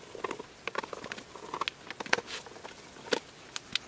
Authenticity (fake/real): real